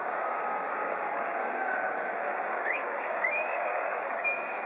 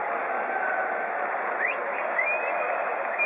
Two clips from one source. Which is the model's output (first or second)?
first